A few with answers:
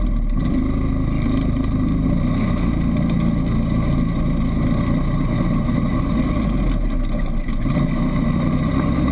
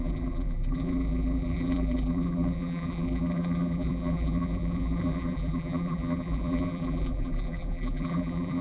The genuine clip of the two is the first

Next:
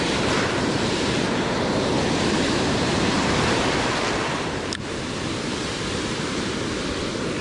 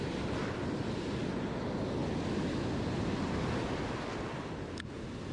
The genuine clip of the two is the second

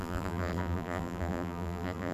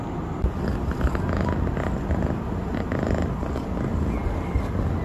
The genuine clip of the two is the second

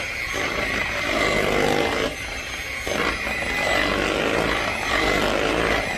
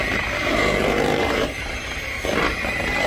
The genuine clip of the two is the first